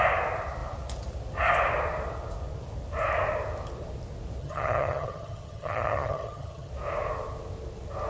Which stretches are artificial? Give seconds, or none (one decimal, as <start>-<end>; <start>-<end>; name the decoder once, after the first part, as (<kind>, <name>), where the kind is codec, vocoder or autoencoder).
4.4-6.7 (vocoder, HiFi-GAN)